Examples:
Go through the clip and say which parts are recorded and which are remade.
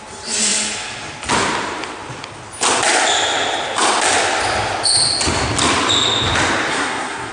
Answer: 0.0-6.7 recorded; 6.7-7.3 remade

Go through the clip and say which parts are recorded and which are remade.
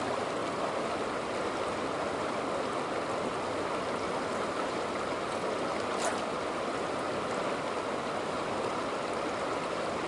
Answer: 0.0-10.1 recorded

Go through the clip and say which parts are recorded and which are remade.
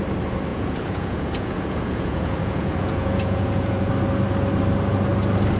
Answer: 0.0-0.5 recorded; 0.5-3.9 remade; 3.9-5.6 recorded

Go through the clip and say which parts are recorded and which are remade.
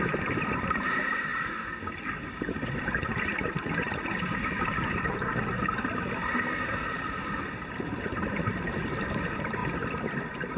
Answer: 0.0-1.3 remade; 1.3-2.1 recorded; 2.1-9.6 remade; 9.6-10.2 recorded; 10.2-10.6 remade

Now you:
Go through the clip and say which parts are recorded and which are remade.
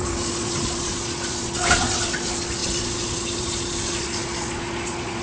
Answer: 0.0-5.2 remade